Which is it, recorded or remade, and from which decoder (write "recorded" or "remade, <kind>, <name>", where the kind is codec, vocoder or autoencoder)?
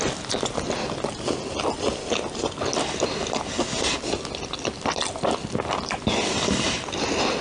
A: recorded